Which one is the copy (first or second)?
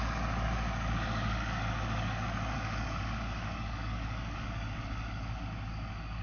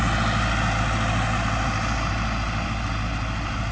first